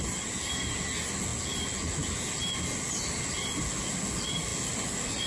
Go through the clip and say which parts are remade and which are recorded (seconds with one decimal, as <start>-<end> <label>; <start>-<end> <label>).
0.0-5.3 recorded